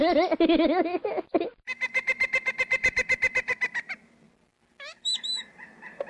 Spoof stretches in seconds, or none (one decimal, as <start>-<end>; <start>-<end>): none